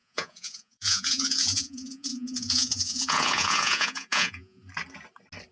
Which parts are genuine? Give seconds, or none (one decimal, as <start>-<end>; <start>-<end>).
4.6-5.5